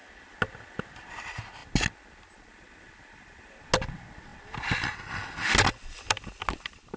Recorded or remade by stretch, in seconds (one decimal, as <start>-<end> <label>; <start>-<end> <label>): 0.0-7.0 recorded